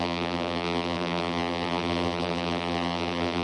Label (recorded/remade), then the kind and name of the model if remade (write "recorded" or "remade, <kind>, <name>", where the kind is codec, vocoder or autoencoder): remade, vocoder, BigVGAN v2